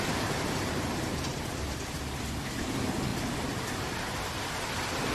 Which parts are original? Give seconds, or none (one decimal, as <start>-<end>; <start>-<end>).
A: 0.0-5.1